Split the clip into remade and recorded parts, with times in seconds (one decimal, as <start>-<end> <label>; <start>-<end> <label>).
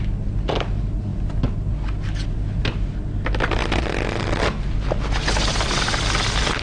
0.0-6.6 recorded